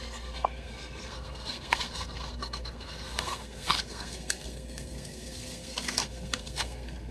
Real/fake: fake